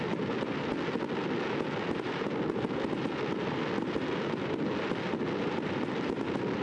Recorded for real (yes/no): yes